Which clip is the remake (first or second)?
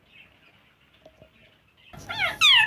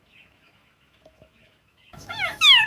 second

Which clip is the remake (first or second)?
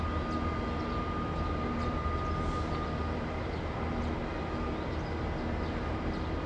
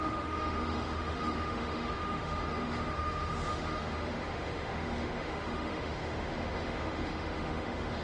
second